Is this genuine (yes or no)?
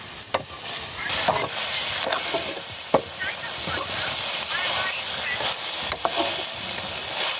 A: yes